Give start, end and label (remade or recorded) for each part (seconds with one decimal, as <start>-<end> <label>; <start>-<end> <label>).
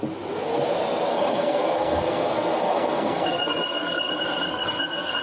0.0-1.1 recorded; 1.1-4.1 remade; 4.1-4.5 recorded; 4.5-5.2 remade